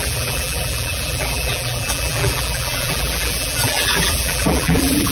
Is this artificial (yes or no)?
yes